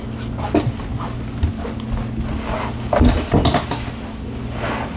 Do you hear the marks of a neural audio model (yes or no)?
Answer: no